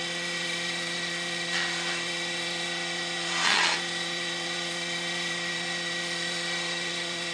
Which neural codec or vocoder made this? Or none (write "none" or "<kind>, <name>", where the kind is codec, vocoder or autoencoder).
vocoder, Vocos